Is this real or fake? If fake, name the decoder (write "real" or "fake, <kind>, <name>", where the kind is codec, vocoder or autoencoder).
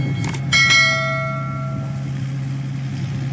real